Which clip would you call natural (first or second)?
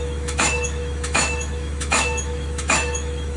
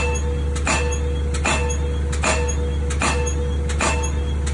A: second